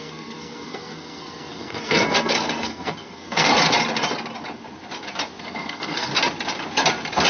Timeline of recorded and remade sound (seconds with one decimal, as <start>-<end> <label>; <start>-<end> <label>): 0.0-3.5 remade; 3.5-5.4 recorded; 5.4-6.1 remade; 6.1-7.3 recorded